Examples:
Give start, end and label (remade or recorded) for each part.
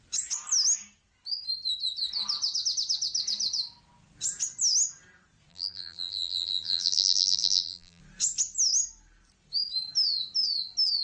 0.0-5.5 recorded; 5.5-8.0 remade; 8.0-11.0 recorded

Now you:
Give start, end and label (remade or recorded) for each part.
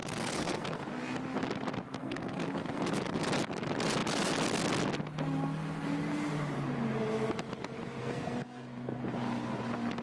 0.0-0.9 remade; 0.9-2.0 recorded; 2.0-2.8 remade; 2.8-8.0 recorded; 8.0-9.0 remade; 9.0-10.0 recorded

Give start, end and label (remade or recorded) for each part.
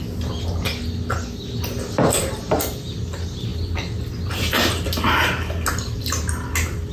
0.0-6.9 recorded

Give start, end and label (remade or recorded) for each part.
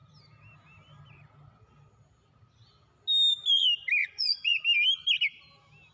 0.0-4.0 recorded; 4.0-4.6 remade; 4.6-5.9 recorded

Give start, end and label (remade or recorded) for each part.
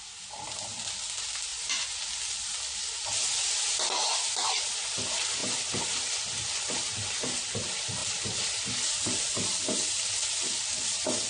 0.0-1.5 recorded; 1.5-2.0 remade; 2.0-11.3 recorded